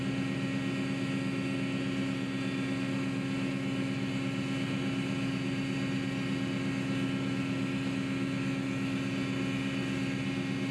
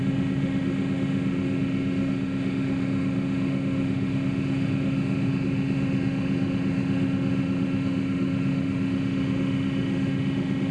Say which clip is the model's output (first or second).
second